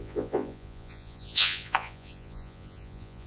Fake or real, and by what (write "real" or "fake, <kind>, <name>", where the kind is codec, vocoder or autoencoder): fake, vocoder, Vocos